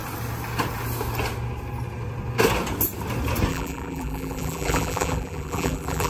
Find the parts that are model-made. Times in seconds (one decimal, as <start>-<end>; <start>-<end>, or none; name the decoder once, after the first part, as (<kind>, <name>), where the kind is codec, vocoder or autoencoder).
3.5-6.1 (vocoder, BigVGAN v2)